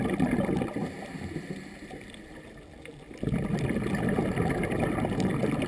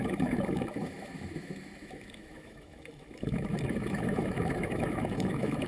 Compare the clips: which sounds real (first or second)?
first